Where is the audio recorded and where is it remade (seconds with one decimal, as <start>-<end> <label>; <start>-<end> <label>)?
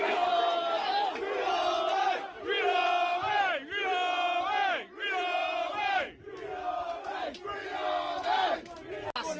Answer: 0.0-5.4 recorded; 5.4-6.0 remade; 6.0-9.4 recorded